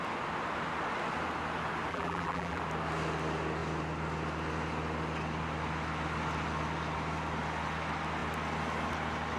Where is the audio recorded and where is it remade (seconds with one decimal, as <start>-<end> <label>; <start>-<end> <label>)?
0.0-1.9 recorded; 1.9-2.6 remade; 2.6-9.4 recorded